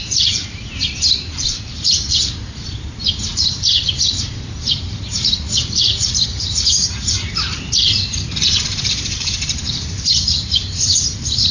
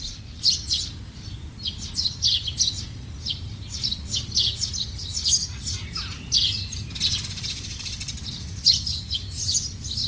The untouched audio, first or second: second